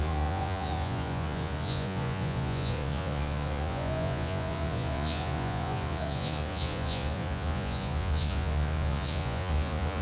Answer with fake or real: fake